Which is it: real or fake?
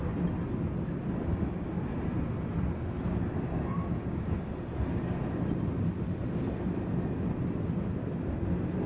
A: real